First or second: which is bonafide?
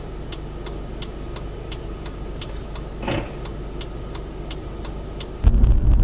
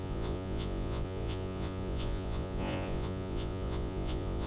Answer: first